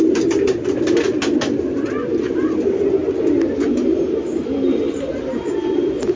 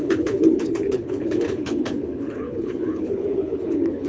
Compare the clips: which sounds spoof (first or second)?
second